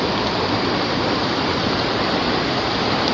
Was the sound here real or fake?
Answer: real